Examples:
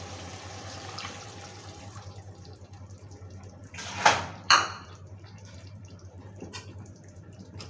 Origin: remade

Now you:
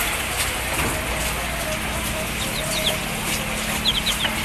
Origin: recorded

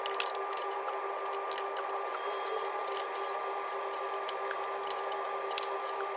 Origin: recorded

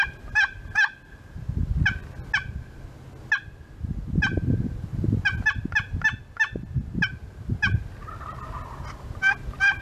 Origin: recorded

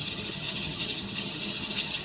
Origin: remade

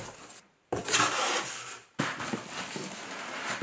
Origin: recorded